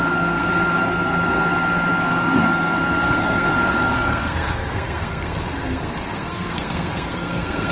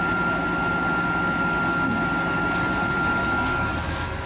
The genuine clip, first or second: second